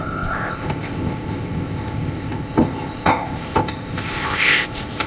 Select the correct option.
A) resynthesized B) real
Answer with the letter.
A